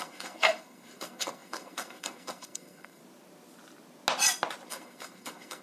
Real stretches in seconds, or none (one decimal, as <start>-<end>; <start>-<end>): 3.0-4.7